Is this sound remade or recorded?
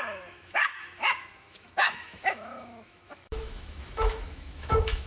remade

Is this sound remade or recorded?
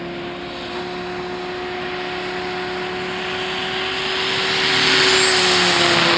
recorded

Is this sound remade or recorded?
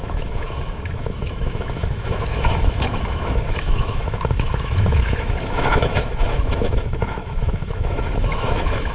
remade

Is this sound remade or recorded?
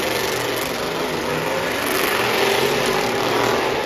recorded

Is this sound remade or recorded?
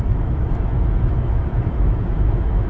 remade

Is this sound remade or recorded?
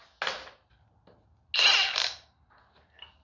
recorded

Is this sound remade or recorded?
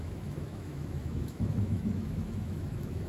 remade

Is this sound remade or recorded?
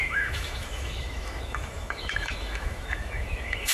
remade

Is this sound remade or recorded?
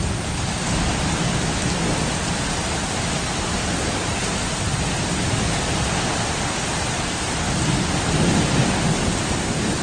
recorded